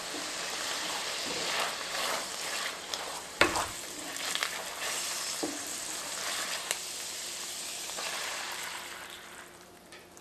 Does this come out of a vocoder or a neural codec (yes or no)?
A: yes